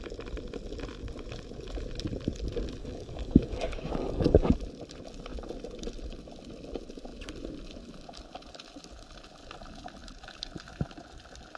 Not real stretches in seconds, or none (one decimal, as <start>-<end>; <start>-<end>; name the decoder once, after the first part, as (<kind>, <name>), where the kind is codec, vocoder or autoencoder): 2.8-4.5 (codec, DAC)